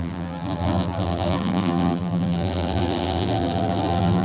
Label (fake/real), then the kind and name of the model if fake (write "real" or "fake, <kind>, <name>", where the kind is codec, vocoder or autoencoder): fake, vocoder, BigVGAN v2